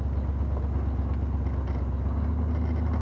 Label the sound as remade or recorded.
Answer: recorded